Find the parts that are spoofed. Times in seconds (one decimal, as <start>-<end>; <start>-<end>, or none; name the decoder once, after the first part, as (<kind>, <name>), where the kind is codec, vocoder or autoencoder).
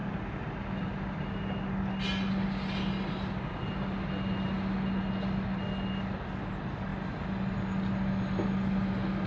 none